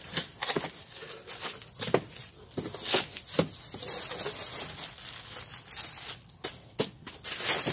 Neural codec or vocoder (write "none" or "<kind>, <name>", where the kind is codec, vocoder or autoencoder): none